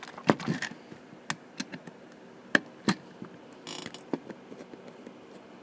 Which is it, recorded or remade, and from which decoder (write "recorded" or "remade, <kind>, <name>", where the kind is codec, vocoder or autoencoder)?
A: recorded